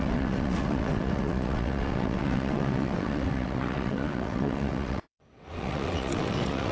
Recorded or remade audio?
remade